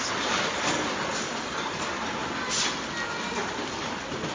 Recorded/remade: recorded